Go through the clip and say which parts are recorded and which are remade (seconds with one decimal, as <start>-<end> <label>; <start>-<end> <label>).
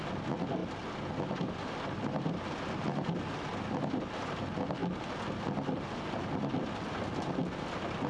0.0-8.1 recorded